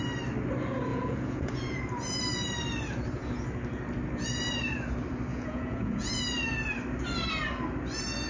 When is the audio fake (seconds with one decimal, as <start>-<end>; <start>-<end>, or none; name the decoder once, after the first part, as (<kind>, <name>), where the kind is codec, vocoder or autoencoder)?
0.9-1.8 (vocoder, Vocos); 5.3-6.2